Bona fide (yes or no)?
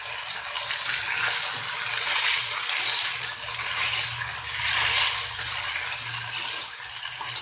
yes